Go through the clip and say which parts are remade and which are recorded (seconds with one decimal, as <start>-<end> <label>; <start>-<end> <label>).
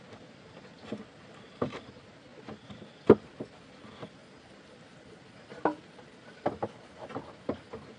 0.0-8.0 recorded